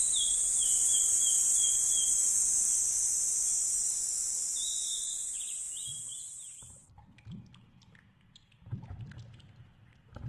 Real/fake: real